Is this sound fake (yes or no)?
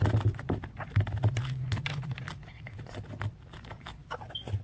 no